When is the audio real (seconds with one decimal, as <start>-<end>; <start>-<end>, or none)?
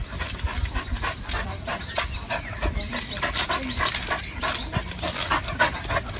0.0-2.9; 4.2-6.2